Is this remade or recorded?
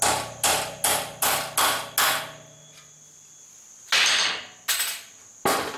recorded